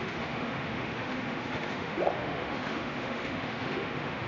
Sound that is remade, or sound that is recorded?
remade